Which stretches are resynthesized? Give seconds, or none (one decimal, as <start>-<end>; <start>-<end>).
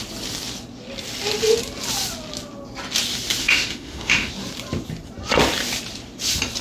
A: 3.4-4.3